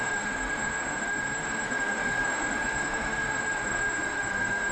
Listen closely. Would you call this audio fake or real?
fake